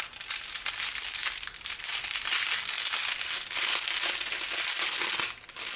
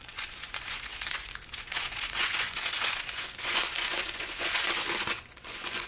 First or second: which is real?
first